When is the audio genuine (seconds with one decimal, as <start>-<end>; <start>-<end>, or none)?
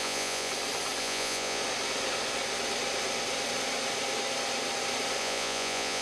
0.5-1.0; 1.6-5.2